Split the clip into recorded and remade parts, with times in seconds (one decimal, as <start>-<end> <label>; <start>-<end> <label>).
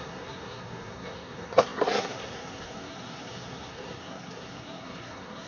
0.0-5.5 remade